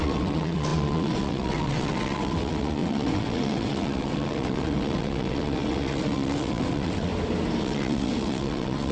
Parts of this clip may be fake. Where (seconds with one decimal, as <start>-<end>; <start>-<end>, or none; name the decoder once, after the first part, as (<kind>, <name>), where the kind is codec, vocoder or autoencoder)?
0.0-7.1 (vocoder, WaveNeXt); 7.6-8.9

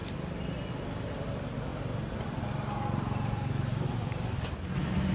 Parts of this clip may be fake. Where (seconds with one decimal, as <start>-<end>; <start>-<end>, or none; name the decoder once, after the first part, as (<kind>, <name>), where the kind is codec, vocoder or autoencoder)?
0.0-0.7 (vocoder, BigVGAN v2); 1.7-5.1

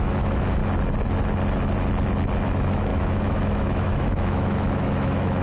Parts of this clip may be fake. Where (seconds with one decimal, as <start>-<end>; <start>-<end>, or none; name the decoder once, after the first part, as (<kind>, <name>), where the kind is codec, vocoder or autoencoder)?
0.0-0.6 (autoencoder, DAC-VAE); 2.5-5.4

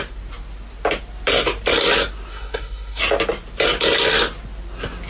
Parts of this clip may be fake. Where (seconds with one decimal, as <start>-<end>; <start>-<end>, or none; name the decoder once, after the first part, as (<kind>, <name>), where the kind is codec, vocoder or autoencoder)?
2.3-3.0 (codec, SNAC)

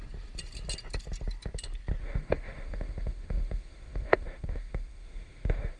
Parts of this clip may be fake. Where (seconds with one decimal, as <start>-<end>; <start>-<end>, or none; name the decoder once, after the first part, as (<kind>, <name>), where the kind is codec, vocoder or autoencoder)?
2.0-5.8 (autoencoder, DAC-VAE)